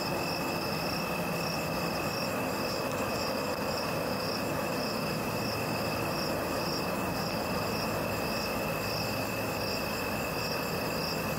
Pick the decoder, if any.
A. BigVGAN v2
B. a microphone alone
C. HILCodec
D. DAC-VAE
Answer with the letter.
B